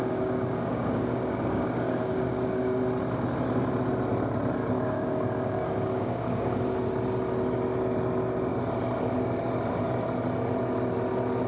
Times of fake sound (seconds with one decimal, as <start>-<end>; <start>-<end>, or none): 0.0-2.8; 4.6-6.6